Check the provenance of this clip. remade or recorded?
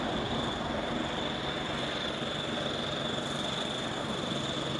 recorded